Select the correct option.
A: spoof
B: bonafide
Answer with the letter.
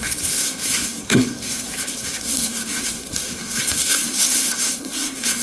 A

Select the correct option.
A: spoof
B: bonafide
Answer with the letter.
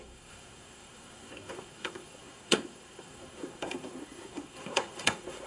A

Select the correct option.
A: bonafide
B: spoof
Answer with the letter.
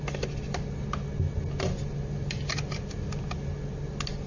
A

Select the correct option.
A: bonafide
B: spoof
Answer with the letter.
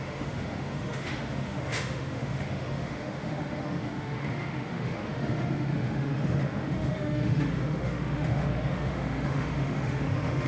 B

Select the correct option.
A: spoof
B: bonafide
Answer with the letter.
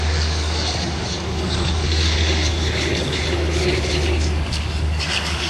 A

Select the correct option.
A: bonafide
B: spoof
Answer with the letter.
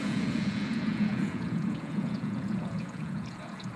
B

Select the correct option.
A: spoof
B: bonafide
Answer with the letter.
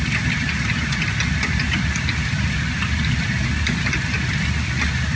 B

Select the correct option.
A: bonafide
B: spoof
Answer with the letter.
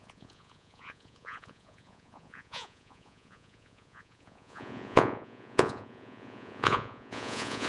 B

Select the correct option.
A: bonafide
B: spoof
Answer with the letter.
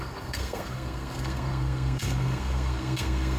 B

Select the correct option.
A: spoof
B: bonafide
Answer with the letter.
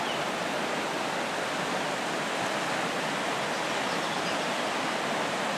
B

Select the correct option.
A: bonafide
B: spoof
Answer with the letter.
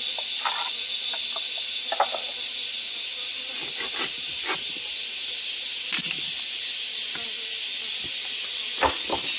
A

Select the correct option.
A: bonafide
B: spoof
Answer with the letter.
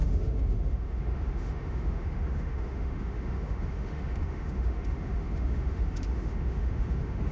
B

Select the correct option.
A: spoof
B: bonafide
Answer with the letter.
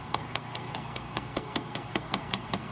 A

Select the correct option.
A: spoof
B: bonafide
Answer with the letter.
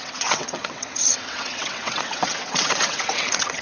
A